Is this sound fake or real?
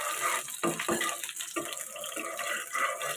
real